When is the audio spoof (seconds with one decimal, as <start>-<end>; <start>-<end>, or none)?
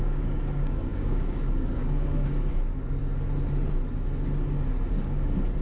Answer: 0.0-3.0; 4.9-5.6